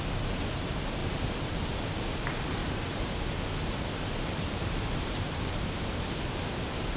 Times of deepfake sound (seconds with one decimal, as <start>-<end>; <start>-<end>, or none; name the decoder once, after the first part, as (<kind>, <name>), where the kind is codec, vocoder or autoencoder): 1.0-1.7 (vocoder, BigVGAN v2); 2.6-7.0